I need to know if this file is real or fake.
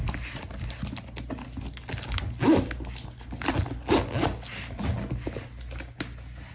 real